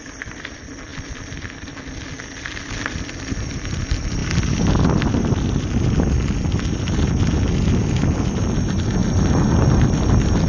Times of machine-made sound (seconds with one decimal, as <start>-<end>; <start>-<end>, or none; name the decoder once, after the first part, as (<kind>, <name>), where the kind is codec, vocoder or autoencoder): none